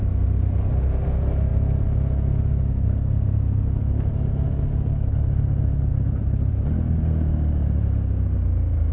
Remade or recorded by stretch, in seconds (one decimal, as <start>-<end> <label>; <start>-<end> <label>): 0.0-8.9 recorded